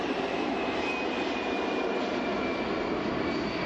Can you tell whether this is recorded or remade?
remade